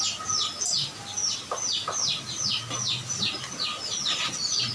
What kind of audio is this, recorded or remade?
recorded